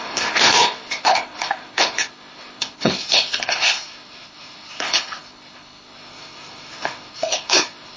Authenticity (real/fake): fake